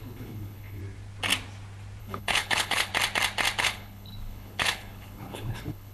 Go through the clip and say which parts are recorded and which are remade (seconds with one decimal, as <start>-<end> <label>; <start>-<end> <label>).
0.0-0.8 remade; 0.8-2.0 recorded; 2.0-2.9 remade; 2.9-3.6 recorded; 3.6-5.9 remade